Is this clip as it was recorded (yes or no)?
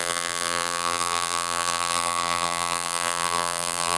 no